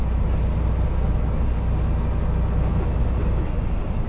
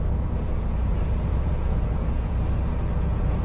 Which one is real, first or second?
first